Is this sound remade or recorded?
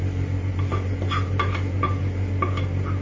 recorded